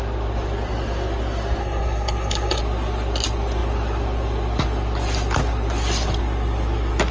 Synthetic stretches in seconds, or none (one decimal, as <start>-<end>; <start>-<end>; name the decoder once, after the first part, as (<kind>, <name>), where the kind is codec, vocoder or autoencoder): 1.6-2.6 (codec, HILCodec)